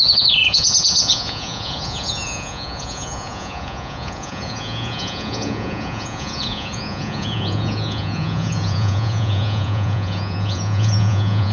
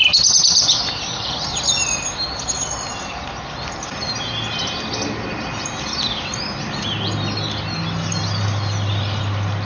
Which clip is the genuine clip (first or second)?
second